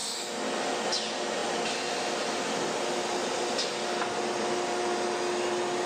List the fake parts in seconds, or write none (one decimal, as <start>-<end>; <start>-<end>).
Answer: none